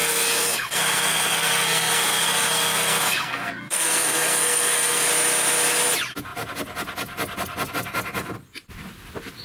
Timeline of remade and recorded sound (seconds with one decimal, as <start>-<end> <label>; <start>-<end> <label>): 0.0-5.1 remade; 5.1-9.4 recorded